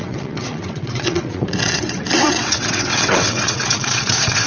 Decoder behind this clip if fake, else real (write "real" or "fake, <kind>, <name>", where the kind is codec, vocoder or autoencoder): fake, vocoder, WaveNeXt